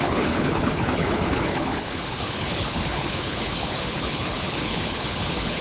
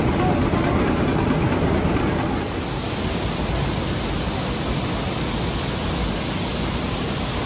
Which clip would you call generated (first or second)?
first